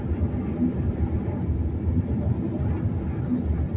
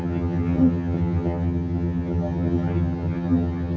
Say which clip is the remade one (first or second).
second